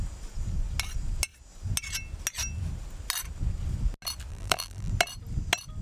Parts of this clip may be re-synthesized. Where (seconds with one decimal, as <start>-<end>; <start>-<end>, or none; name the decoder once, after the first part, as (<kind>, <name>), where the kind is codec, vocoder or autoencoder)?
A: 4.3-4.9 (vocoder, BigVGAN v2)